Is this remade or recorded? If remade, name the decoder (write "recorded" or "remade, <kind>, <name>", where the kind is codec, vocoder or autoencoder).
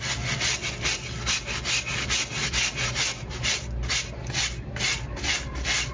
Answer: recorded